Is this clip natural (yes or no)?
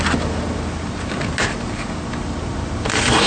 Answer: yes